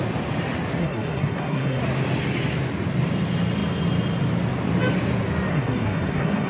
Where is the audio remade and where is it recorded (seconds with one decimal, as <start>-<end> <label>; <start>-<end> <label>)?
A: 0.0-0.8 recorded; 0.8-1.8 remade; 1.8-5.5 recorded; 5.5-6.5 remade